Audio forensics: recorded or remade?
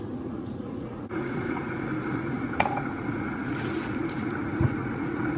remade